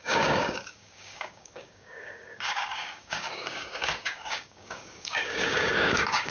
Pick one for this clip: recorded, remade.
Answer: remade